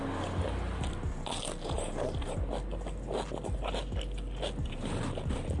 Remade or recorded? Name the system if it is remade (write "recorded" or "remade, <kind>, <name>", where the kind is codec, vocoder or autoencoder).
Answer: recorded